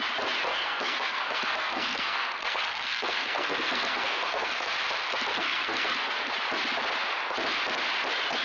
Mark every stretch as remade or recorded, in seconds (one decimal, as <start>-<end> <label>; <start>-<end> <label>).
0.0-0.5 recorded; 0.5-4.7 remade; 4.7-5.3 recorded; 5.3-6.3 remade; 6.3-8.4 recorded